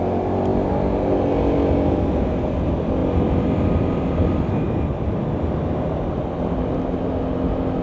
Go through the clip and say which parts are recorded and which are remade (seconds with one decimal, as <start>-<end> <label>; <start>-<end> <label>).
0.0-7.8 recorded